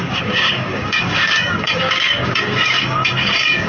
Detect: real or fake fake